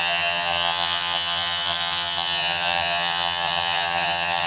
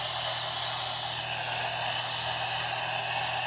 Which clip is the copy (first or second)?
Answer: first